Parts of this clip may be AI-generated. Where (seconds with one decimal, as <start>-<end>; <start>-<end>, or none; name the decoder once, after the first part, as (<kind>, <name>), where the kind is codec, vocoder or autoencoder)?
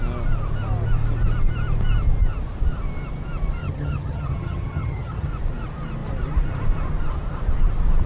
3.6-5.3 (vocoder, HiFi-GAN)